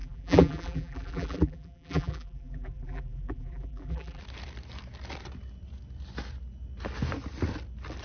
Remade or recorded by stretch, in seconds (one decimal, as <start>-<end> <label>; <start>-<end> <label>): 0.0-4.2 remade; 4.2-8.0 recorded